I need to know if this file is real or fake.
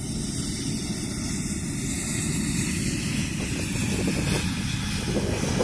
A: real